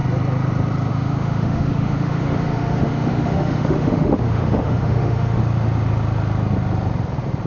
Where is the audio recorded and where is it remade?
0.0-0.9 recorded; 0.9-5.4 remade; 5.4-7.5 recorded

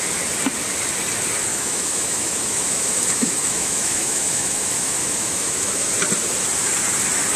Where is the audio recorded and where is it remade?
0.0-1.5 recorded; 1.5-5.9 remade; 5.9-7.4 recorded

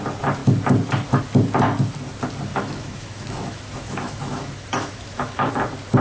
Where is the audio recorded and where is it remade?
0.0-2.5 recorded; 2.5-5.5 remade; 5.5-6.0 recorded

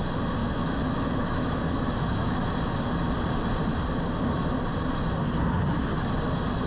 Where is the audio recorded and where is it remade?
0.0-0.4 recorded; 0.4-2.5 remade; 2.5-6.7 recorded

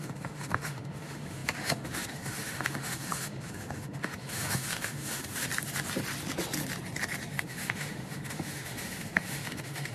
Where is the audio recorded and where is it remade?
0.0-5.5 remade; 5.5-7.3 recorded; 7.3-9.9 remade

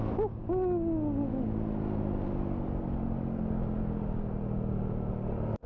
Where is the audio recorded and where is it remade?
0.0-5.7 recorded